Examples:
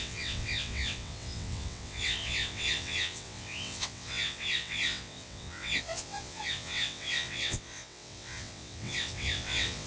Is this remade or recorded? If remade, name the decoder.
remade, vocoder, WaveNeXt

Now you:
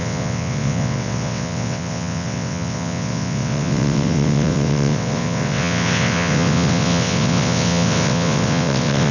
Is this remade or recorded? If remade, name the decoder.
remade, vocoder, WaveNeXt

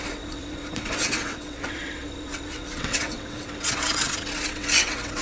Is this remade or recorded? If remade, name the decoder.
remade, vocoder, WaveNeXt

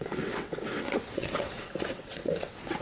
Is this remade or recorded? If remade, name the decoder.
remade, vocoder, WaveNeXt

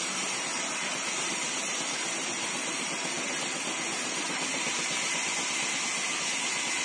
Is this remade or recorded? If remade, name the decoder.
recorded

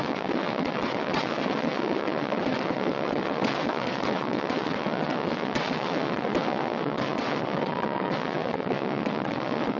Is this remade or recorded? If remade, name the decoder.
remade, vocoder, WaveNeXt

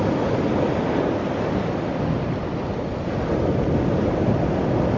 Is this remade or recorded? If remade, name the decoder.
recorded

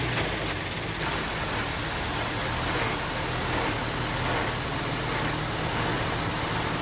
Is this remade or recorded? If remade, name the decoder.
recorded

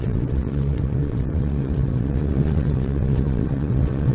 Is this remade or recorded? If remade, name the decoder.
remade, vocoder, WaveNeXt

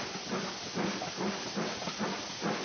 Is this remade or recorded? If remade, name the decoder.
recorded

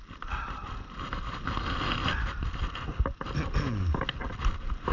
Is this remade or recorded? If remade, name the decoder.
recorded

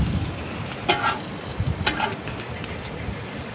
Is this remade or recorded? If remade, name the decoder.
recorded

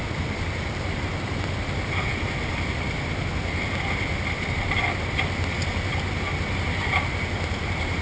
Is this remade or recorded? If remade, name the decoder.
recorded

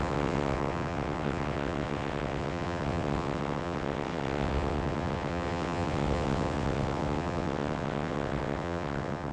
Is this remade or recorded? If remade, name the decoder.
remade, vocoder, WaveNeXt